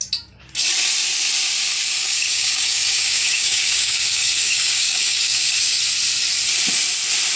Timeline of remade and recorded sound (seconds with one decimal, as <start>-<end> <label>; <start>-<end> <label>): 0.0-2.0 recorded; 2.0-5.8 remade; 5.8-7.4 recorded